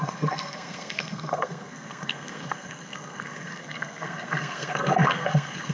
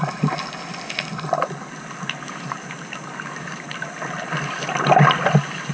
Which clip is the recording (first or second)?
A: second